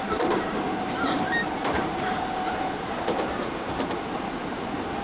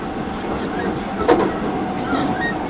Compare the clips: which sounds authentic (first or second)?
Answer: second